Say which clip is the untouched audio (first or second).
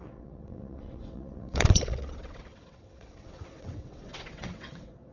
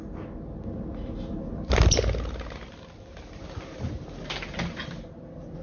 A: second